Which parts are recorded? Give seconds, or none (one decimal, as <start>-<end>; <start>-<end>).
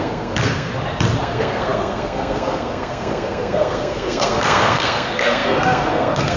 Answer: 0.7-1.2